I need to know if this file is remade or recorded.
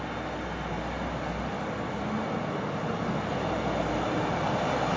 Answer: recorded